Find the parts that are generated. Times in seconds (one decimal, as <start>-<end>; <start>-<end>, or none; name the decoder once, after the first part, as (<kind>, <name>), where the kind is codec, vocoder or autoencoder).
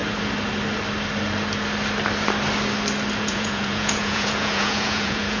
3.2-5.4 (vocoder, Vocos)